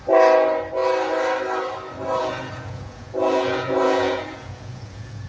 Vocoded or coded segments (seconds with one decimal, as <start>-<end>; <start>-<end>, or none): 2.2-5.3